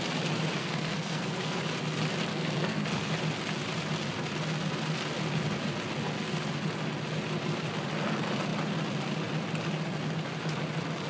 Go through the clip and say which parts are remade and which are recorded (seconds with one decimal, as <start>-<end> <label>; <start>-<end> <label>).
0.0-0.6 recorded; 0.6-1.6 remade; 1.6-2.3 recorded; 2.3-3.1 remade; 3.1-11.1 recorded